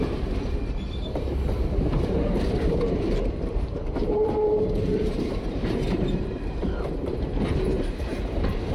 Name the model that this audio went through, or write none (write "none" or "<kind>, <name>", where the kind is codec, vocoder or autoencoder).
vocoder, BigVGAN v2